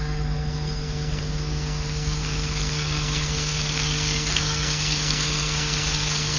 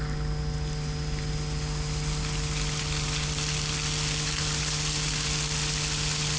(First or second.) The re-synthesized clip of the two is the first